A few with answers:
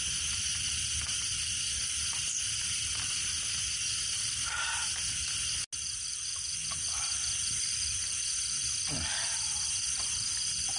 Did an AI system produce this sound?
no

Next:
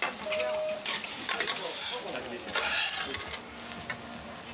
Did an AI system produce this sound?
no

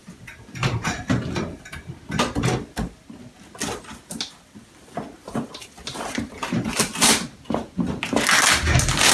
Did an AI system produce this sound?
no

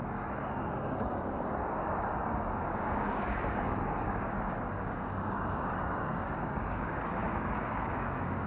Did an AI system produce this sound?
yes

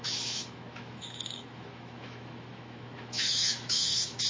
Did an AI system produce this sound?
yes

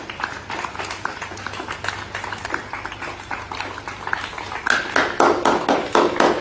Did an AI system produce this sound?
no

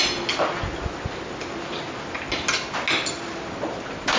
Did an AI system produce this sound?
no